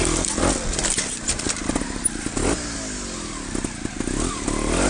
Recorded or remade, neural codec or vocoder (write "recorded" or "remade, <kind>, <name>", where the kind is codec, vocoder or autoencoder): recorded